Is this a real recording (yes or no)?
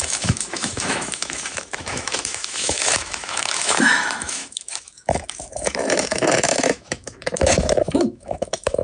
no